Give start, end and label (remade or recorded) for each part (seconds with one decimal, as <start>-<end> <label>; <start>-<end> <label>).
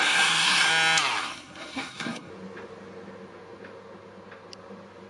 0.0-0.7 remade; 0.7-1.2 recorded; 1.2-2.3 remade; 2.3-5.1 recorded